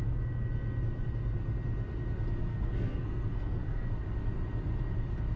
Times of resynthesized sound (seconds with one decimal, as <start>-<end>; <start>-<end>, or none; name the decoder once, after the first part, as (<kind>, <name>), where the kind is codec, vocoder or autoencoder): 2.4-3.9 (codec, SNAC)